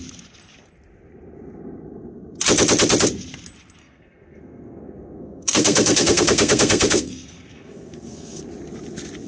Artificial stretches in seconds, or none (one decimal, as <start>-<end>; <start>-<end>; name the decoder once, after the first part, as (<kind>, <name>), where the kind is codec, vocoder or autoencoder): 3.8-8.4 (codec, SNAC)